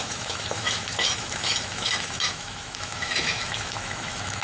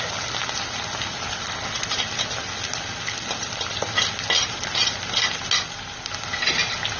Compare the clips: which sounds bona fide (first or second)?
second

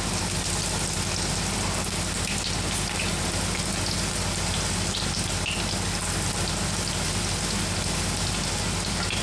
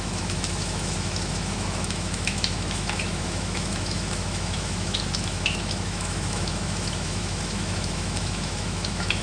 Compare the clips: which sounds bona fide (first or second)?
first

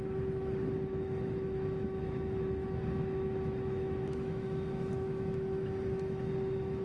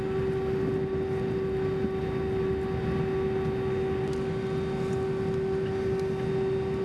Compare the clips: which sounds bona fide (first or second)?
second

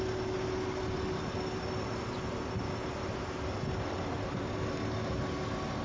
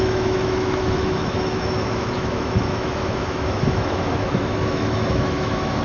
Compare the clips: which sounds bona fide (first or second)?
first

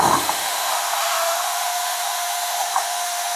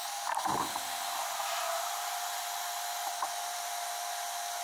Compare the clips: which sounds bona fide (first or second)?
second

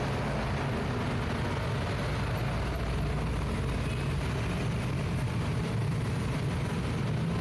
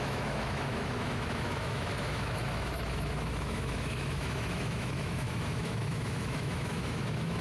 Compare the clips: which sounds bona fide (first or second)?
first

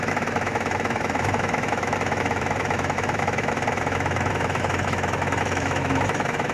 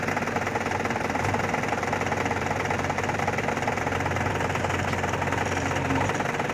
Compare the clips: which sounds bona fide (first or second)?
second